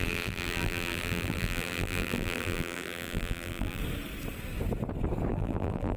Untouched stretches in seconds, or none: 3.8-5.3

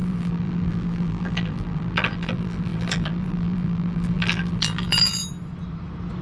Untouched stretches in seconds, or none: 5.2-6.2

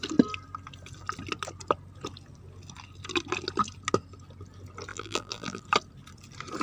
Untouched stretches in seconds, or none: 0.0-4.9; 5.6-6.6

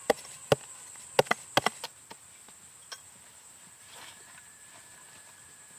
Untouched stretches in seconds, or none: 0.0-2.8; 4.7-5.8

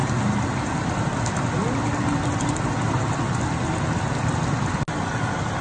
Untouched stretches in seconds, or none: 1.6-5.0